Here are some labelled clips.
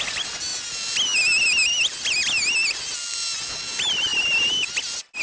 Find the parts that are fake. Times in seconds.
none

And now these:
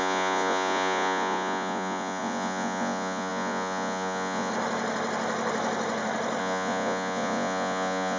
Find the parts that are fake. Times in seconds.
0.0-4.5 (vocoder, Vocos); 6.4-8.2

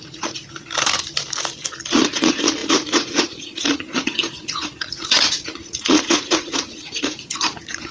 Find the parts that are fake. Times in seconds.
0.0-0.4 (vocoder, Vocos); 1.9-7.9

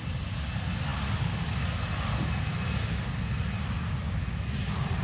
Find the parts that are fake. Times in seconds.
none